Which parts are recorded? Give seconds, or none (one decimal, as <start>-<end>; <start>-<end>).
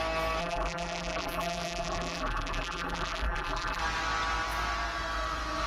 0.0-0.4; 3.8-5.7